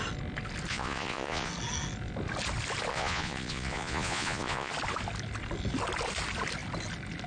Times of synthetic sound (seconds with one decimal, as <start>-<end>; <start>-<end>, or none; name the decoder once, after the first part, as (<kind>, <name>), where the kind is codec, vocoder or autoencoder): 0.7-1.5 (vocoder, Vocos); 2.9-4.7